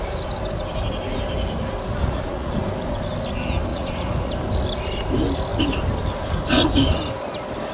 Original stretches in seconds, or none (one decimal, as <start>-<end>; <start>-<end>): 0.0-2.0; 2.5-3.7; 4.3-7.7